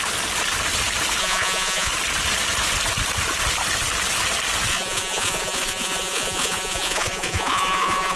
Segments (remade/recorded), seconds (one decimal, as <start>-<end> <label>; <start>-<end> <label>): 0.0-1.2 recorded; 1.2-1.9 remade; 1.9-4.7 recorded; 4.7-8.2 remade

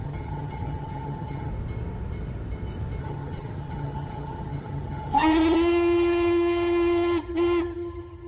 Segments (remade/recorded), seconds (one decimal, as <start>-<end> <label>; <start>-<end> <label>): 0.0-1.5 remade; 1.5-3.0 recorded; 3.0-8.3 remade

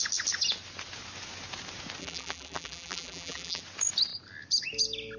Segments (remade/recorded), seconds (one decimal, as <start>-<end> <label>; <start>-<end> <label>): 0.0-2.0 recorded; 2.0-3.6 remade; 3.6-5.2 recorded

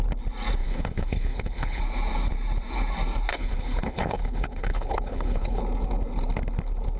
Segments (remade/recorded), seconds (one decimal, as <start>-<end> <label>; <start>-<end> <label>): 0.0-0.6 recorded; 0.6-1.8 remade; 1.8-3.3 recorded; 3.3-5.6 remade; 5.6-7.0 recorded

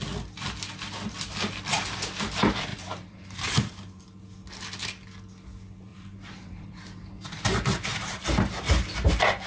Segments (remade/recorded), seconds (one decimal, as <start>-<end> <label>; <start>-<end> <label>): 0.0-2.7 recorded; 2.7-4.0 remade; 4.0-5.9 recorded; 5.9-9.1 remade; 9.1-9.5 recorded

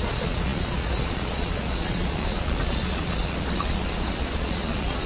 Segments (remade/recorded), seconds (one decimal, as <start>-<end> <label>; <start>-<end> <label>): 0.0-5.1 remade